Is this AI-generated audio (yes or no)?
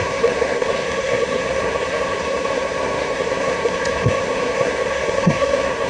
yes